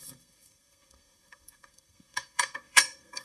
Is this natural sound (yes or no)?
no